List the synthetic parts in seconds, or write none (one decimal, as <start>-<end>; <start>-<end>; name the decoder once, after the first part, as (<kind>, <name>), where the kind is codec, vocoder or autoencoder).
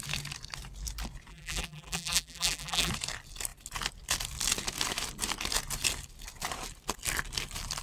1.3-2.9 (vocoder, BigVGAN v2)